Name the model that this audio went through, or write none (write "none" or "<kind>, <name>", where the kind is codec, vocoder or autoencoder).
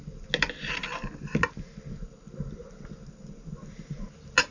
none